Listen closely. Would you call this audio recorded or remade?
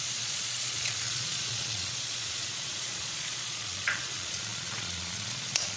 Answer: remade